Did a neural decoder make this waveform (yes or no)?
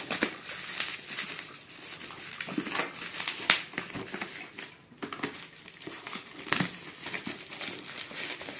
no